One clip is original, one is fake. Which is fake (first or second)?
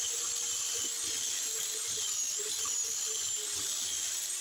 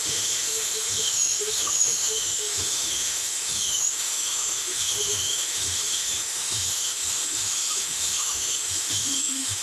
second